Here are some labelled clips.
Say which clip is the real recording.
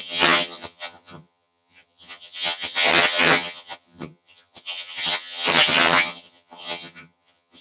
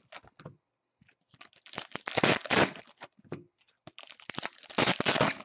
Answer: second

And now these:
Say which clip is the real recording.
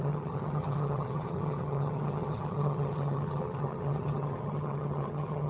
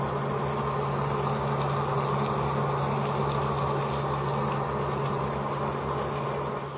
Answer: second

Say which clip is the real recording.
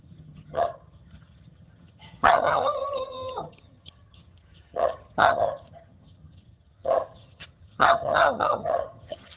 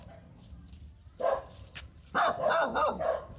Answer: second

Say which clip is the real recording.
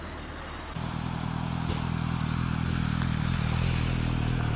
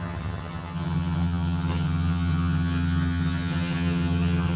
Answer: first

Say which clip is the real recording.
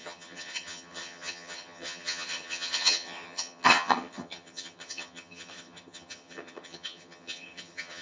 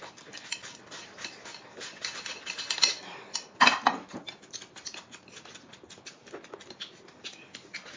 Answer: second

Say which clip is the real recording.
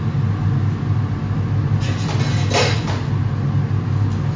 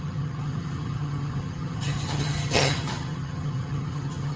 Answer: first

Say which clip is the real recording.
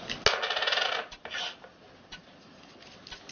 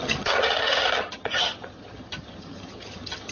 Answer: first